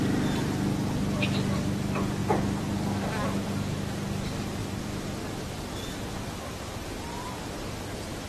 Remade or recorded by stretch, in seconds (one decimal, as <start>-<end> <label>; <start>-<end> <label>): 0.0-2.2 recorded; 2.2-3.8 remade; 3.8-4.6 recorded; 4.6-8.3 remade